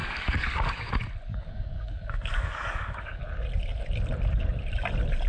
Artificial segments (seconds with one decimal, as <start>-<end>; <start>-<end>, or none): 0.0-0.9; 1.3-3.2